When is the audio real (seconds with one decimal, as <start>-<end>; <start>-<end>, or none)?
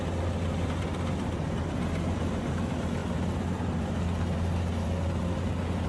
0.0-5.9